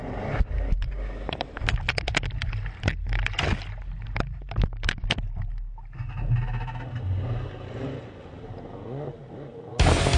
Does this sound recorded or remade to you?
recorded